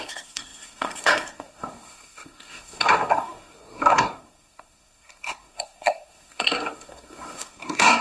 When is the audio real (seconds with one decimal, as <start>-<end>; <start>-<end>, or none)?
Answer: none